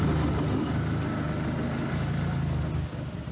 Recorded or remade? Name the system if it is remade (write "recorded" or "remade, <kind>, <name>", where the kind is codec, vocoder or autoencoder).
recorded